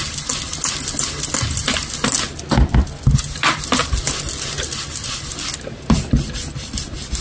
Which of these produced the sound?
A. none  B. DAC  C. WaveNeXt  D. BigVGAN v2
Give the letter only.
A